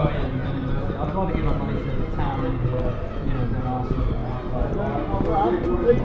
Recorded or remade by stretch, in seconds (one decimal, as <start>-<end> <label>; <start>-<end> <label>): 0.0-6.0 recorded